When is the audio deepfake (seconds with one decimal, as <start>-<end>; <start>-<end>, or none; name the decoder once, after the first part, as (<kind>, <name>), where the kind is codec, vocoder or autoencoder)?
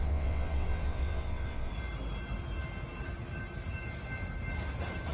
0.0-1.7 (vocoder, WaveNeXt)